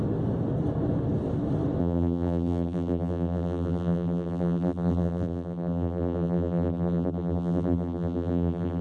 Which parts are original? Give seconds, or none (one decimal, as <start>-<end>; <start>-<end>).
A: 0.0-1.8